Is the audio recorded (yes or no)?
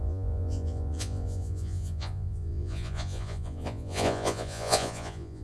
no